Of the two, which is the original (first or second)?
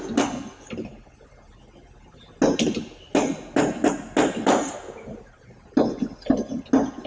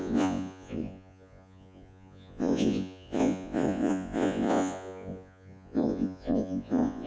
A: first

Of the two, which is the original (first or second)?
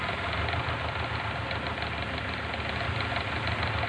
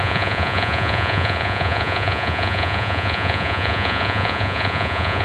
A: first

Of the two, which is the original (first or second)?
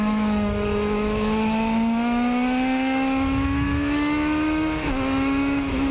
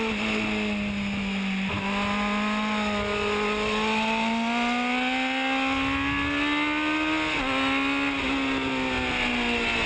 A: second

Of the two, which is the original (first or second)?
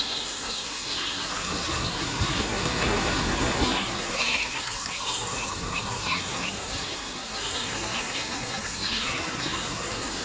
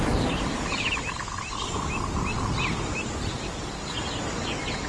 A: second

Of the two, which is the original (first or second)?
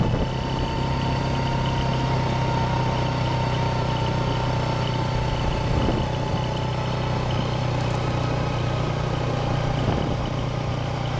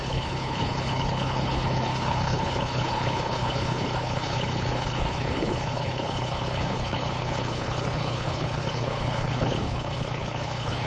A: first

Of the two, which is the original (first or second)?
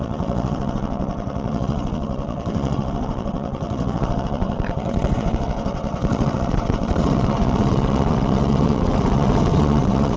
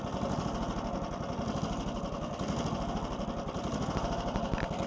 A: second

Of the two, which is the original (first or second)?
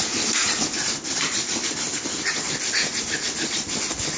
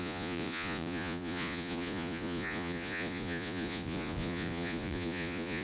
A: first